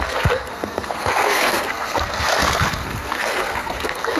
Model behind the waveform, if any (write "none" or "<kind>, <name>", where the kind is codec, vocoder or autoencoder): codec, SNAC